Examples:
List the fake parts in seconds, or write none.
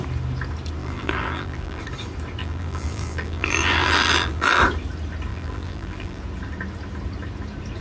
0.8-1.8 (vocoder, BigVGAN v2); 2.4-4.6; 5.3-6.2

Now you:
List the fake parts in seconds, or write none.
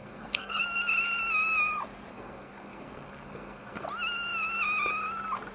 0.0-0.6 (codec, SNAC); 2.1-3.9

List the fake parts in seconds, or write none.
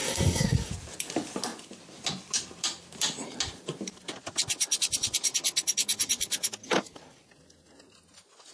0.0-0.7 (codec, SNAC)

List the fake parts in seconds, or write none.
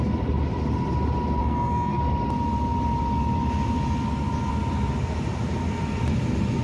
1.4-2.0 (codec, SNAC)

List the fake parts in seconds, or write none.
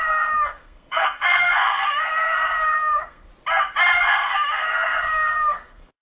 0.0-3.3 (codec, SNAC); 4.0-6.0